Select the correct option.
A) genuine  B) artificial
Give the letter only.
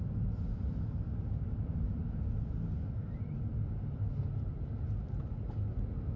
A